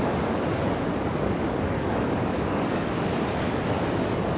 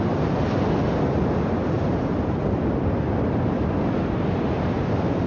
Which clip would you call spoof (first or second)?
first